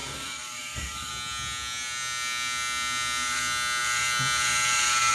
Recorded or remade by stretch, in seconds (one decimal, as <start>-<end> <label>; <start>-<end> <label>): 0.0-1.1 remade; 1.1-5.1 recorded